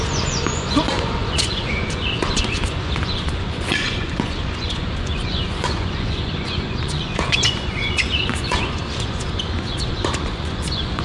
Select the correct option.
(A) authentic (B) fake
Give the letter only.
B